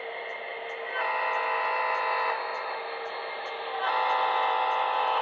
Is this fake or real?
real